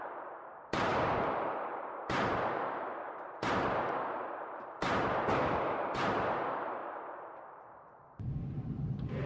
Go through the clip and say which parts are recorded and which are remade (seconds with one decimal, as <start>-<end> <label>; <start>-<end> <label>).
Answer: 0.0-6.8 remade; 6.8-7.5 recorded; 7.5-9.3 remade